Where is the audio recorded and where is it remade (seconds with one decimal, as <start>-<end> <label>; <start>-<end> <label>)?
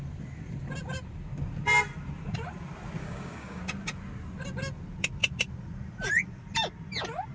0.0-3.0 recorded; 3.0-3.6 remade; 3.6-7.3 recorded